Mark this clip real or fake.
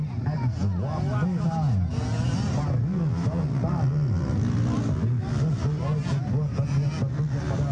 real